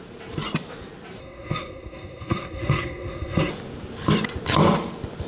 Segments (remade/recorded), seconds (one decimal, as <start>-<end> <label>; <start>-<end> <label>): 0.0-1.2 recorded; 1.2-3.5 remade; 3.5-5.3 recorded